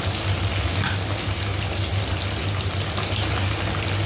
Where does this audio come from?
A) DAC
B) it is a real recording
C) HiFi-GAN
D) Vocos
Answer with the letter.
B